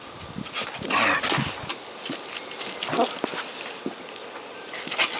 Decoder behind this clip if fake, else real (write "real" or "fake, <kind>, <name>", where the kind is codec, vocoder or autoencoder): real